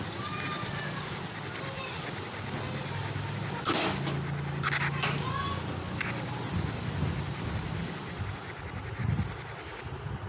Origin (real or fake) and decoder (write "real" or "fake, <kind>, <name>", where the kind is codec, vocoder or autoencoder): real